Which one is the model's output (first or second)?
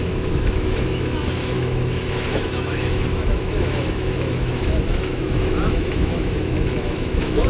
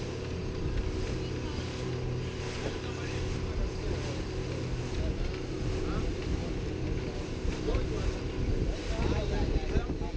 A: first